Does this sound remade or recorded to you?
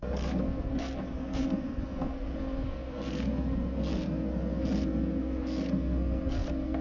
remade